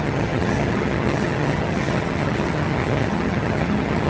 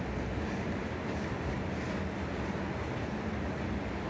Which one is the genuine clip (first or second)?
second